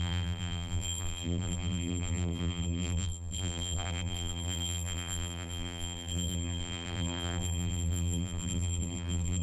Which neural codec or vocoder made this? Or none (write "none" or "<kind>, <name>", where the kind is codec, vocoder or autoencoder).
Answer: vocoder, BigVGAN v2